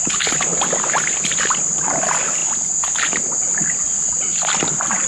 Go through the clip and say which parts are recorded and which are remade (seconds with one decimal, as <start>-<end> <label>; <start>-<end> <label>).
0.0-5.1 recorded